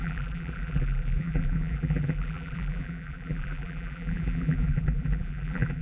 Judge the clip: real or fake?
fake